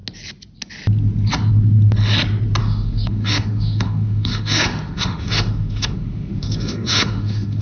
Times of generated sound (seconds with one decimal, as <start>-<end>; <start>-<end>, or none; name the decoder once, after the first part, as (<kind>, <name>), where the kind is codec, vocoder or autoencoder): 2.6-7.6 (autoencoder, DAC-VAE)